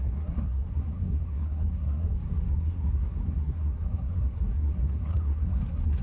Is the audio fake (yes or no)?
yes